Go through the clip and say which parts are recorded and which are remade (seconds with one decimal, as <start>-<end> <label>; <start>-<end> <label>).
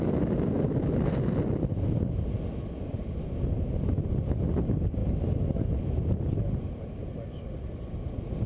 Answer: 0.0-8.5 recorded